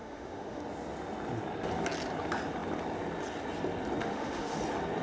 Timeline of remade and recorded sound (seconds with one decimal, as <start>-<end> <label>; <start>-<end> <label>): 0.0-0.6 remade; 0.6-4.0 recorded; 4.0-4.6 remade; 4.6-5.0 recorded